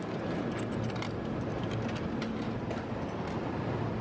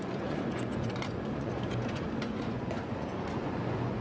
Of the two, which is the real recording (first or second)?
first